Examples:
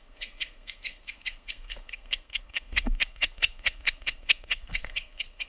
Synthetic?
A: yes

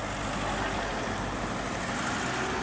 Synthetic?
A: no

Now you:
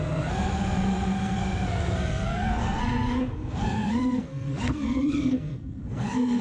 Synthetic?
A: yes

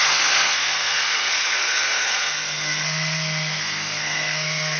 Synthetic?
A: yes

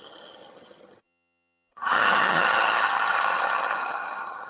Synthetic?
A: yes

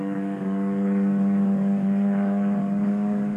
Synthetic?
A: yes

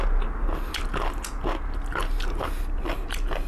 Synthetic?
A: no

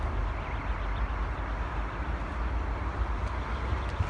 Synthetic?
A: no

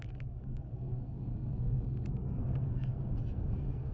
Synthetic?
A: yes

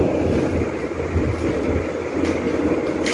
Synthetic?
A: no